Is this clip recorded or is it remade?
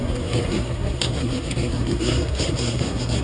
remade